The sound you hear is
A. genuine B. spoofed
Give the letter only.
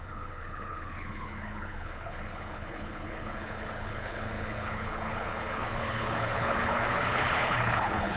B